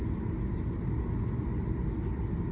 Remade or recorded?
recorded